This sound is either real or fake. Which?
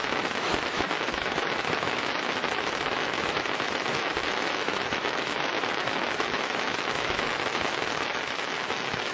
fake